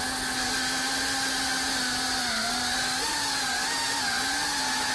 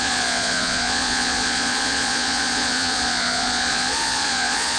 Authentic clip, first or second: first